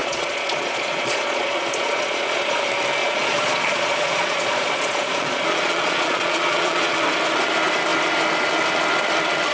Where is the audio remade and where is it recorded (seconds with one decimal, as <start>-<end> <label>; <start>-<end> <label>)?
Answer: 0.0-2.6 remade; 2.6-3.0 recorded; 3.0-7.0 remade; 7.0-9.5 recorded

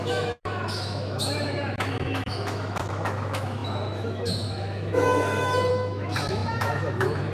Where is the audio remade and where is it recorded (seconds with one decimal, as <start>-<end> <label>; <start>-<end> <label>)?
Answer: 0.0-7.3 remade